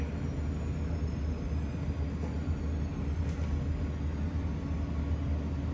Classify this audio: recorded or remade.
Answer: recorded